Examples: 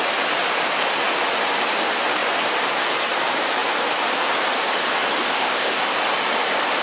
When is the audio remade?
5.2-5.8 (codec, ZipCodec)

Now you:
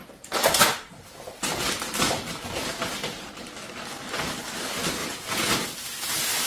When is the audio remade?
5.0-5.5 (vocoder, Vocos)

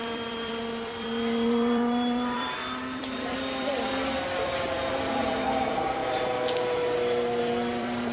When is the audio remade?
0.0-6.0 (vocoder, BigVGAN v2); 7.4-8.1